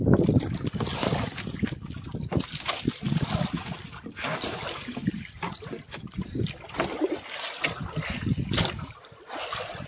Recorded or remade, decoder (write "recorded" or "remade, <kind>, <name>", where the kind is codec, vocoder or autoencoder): recorded